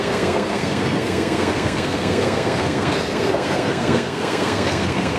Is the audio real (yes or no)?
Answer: no